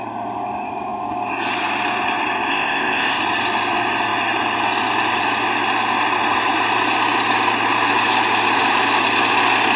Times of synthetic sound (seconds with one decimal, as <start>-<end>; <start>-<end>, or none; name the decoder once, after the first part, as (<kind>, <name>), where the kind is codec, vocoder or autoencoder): 2.5-3.2 (codec, ZipCodec)